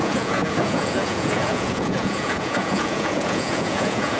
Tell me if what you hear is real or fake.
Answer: fake